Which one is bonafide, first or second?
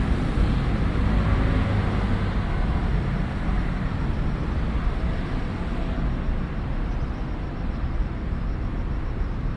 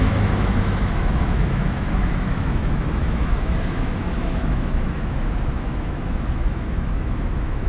first